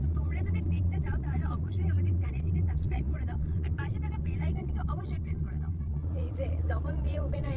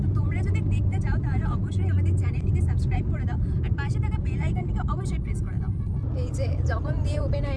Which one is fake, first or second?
first